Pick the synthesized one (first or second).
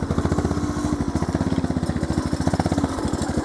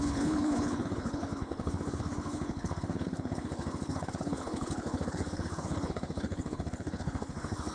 second